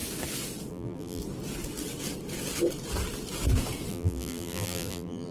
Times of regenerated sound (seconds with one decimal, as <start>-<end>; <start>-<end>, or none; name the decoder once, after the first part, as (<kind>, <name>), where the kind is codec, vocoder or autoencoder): 0.7-1.2 (vocoder, BigVGAN v2); 3.9-5.3